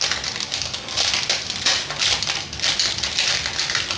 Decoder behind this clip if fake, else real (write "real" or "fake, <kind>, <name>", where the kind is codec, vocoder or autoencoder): real